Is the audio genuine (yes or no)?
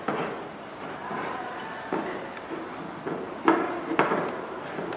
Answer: yes